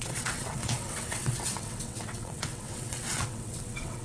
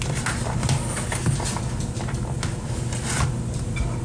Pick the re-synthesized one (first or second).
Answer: first